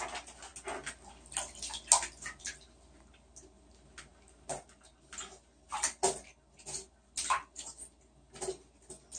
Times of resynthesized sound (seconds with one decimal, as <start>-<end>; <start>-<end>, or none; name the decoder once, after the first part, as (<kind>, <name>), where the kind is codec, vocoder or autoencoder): none